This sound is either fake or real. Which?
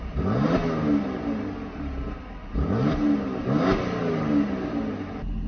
real